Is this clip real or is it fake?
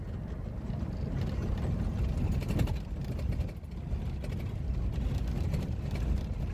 real